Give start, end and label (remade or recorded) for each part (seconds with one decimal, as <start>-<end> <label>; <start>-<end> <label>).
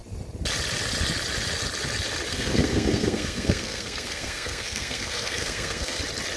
0.0-2.3 recorded; 2.3-6.0 remade; 6.0-6.4 recorded